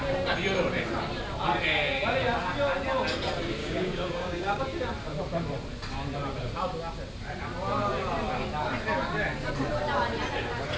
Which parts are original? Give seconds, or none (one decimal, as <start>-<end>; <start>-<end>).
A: 0.0-3.6; 4.6-10.8